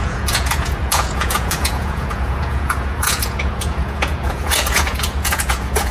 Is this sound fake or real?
fake